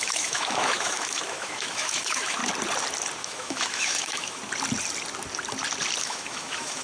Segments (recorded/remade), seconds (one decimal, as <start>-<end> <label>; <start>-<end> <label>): 0.0-2.4 remade; 2.4-3.2 recorded; 3.2-4.4 remade; 4.4-6.0 recorded; 6.0-6.8 remade